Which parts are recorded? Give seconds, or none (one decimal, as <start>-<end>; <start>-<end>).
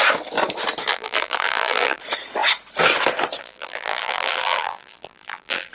0.0-0.9; 2.0-3.4